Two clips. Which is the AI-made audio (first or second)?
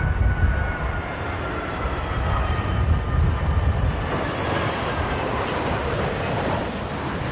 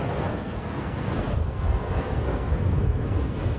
second